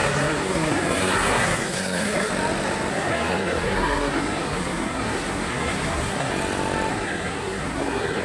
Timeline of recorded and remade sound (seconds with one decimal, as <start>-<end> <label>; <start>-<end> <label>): 0.0-2.3 remade; 2.3-2.9 recorded; 2.9-6.3 remade; 6.3-6.9 recorded; 6.9-8.2 remade